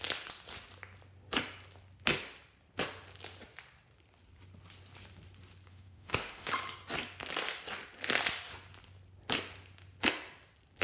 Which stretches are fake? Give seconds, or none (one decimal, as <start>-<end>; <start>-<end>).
5.7-6.5